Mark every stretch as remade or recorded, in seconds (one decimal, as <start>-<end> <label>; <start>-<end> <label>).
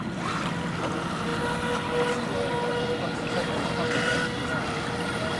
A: 0.0-5.4 recorded